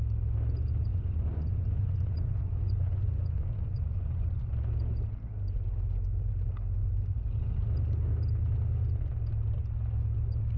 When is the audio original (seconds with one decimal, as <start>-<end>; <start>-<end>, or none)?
0.0-0.9; 4.5-10.6